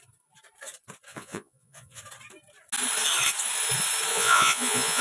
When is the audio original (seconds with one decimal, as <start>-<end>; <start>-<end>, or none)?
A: 0.0-1.1; 2.0-4.1